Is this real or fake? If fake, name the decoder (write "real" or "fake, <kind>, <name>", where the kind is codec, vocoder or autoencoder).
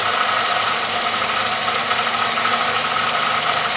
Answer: real